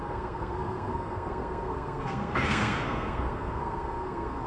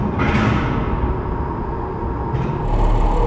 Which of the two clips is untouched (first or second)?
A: second